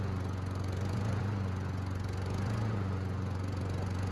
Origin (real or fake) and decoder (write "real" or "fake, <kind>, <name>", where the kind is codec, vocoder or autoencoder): fake, vocoder, Vocos